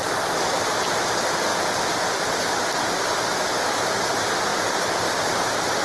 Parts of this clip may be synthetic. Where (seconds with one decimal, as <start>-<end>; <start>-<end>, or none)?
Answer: none

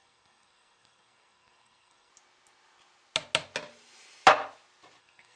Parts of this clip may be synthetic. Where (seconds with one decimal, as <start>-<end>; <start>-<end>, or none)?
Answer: 0.0-2.1; 5.0-5.4

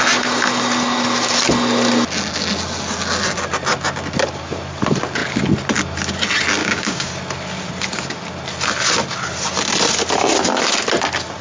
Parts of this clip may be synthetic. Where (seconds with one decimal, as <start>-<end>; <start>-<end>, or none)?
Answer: 6.6-7.1

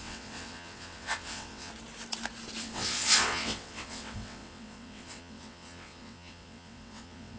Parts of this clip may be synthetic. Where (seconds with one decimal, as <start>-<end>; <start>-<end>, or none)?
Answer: 0.0-1.7; 2.6-7.4

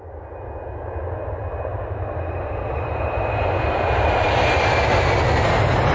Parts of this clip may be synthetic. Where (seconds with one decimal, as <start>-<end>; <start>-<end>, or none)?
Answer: 1.7-5.1

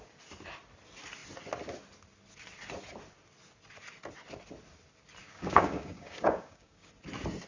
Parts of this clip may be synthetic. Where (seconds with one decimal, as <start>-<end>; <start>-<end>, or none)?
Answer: 5.2-6.9

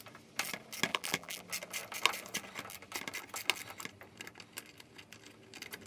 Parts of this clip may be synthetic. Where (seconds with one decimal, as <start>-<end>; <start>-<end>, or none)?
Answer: 0.9-1.4

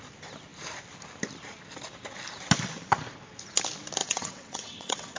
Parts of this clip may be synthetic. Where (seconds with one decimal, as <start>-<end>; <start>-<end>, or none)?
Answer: 4.0-5.2